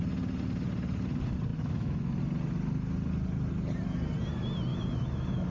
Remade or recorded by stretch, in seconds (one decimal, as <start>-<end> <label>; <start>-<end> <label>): 0.0-1.5 recorded; 1.5-2.2 remade; 2.2-4.7 recorded; 4.7-5.5 remade